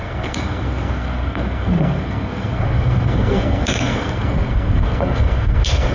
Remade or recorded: remade